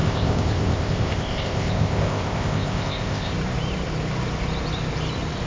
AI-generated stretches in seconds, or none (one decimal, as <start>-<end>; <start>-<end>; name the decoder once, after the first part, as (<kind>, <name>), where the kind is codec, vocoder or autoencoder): 0.0-3.3 (codec, ZipCodec)